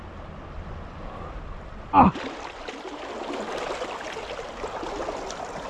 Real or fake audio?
real